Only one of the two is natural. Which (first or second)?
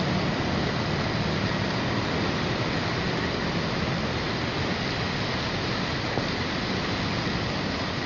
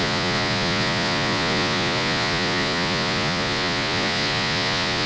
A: first